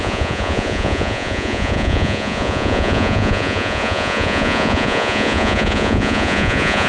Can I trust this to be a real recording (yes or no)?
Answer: no